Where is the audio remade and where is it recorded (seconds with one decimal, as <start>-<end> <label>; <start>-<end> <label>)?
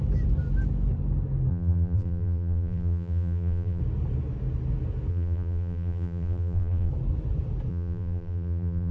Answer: 0.0-1.5 recorded; 1.5-3.8 remade; 3.8-5.1 recorded; 5.1-6.9 remade; 6.9-7.7 recorded; 7.7-8.9 remade